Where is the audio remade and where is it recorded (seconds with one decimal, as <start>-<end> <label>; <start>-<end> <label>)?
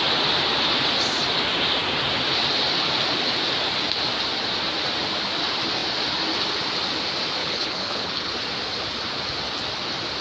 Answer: 0.0-7.4 recorded; 7.4-8.3 remade; 8.3-10.2 recorded